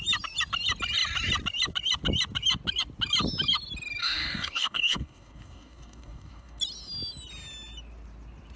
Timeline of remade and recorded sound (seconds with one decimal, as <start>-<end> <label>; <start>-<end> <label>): 0.0-4.0 recorded; 4.0-6.6 remade; 6.6-8.6 recorded